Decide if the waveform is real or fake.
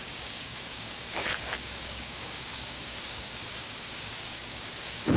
fake